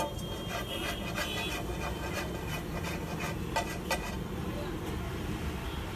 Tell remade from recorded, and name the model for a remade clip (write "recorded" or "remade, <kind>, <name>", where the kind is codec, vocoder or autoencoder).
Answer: recorded